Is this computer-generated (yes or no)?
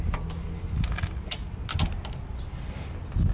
no